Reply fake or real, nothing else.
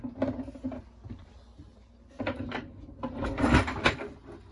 real